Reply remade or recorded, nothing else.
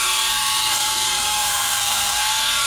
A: remade